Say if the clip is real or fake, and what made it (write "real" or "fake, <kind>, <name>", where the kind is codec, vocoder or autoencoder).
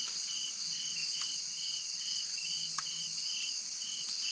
real